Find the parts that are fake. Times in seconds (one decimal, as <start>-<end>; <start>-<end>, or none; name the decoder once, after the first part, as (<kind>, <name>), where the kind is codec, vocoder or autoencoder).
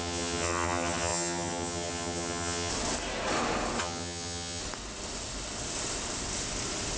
0.0-2.7 (vocoder, HiFi-GAN); 3.8-4.6